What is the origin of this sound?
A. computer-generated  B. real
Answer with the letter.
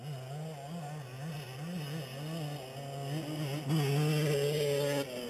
B